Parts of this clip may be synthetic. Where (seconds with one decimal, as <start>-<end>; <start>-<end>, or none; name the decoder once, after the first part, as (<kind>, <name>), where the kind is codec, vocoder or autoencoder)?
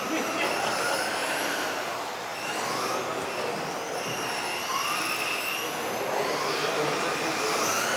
1.2-1.9 (vocoder, BigVGAN v2)